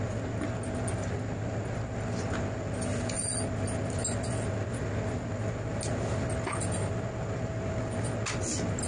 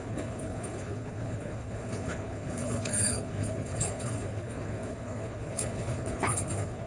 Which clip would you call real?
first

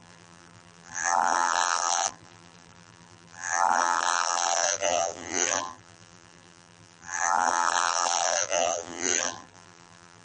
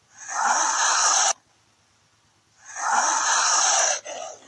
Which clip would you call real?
second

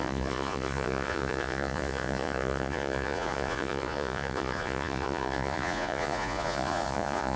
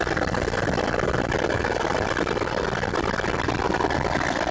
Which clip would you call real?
second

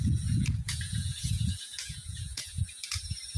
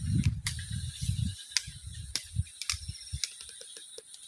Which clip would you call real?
second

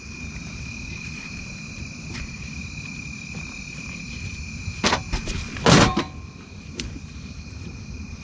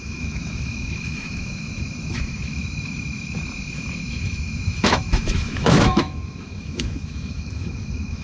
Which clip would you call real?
first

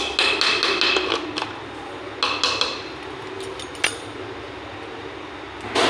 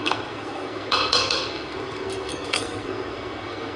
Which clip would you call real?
first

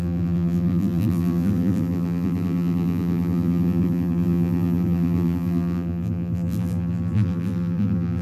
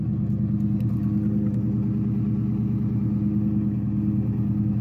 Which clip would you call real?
second